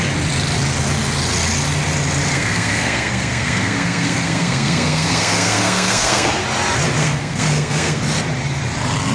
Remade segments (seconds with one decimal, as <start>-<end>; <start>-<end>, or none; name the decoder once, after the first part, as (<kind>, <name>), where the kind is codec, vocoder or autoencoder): 2.3-6.3 (codec, SNAC); 7.0-8.0